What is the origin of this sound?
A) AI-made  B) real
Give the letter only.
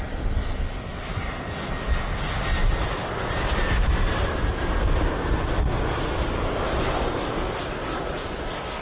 B